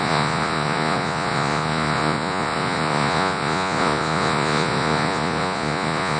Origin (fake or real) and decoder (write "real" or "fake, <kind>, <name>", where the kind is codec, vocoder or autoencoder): fake, vocoder, Vocos